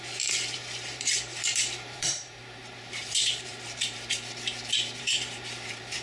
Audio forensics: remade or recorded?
remade